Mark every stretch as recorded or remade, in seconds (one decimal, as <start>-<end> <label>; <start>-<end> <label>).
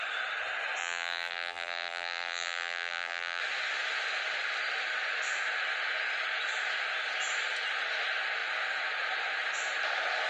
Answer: 0.0-0.8 recorded; 0.8-3.4 remade; 3.4-10.3 recorded